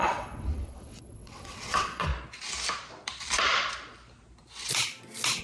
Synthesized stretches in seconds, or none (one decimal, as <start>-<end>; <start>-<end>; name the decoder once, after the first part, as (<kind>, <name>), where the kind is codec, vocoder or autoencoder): 0.0-2.1 (vocoder, WaveNeXt)